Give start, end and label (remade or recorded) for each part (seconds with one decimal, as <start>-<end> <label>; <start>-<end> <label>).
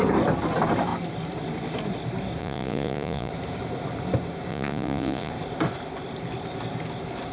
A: 0.0-2.4 recorded; 2.4-3.3 remade; 3.3-4.5 recorded; 4.5-5.3 remade; 5.3-7.3 recorded